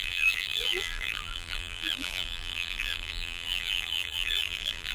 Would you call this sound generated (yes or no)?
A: yes